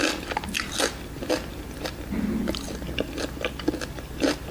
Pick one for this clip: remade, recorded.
recorded